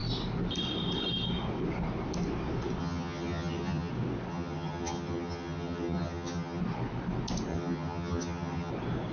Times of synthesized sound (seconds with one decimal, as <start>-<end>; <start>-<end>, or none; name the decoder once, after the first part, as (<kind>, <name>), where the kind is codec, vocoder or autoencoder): 2.8-3.9 (vocoder, HiFi-GAN); 4.3-6.6; 7.5-8.7

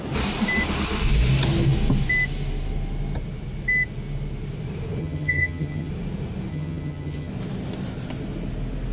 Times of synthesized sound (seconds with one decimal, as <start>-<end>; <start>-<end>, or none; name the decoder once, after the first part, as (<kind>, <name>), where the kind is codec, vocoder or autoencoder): 5.0-5.9 (vocoder, HiFi-GAN); 6.5-7.3